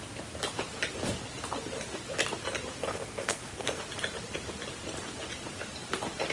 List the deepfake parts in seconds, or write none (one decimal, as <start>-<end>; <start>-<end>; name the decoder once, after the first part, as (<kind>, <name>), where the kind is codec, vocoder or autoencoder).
2.8-3.8 (codec, SNAC)